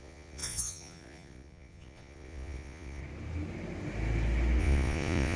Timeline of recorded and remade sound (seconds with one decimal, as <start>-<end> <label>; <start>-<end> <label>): 0.0-3.0 remade; 3.0-4.6 recorded; 4.6-5.4 remade